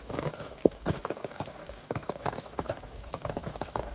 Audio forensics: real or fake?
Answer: fake